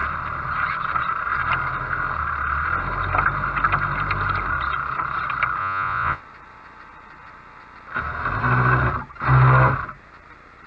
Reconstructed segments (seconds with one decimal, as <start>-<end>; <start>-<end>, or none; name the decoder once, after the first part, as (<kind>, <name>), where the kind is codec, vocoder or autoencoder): 5.6-6.2 (vocoder, Vocos)